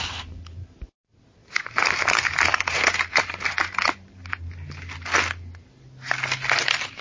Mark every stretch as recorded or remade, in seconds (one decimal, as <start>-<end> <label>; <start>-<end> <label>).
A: 0.0-2.5 recorded; 2.5-4.4 remade; 4.4-7.0 recorded